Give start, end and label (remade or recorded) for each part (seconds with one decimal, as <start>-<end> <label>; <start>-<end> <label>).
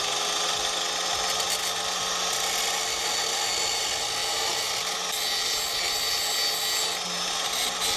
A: 0.0-8.0 recorded